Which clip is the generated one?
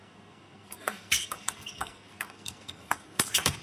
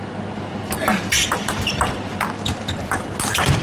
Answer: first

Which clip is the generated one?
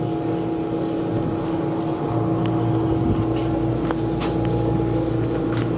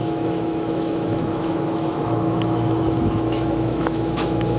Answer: second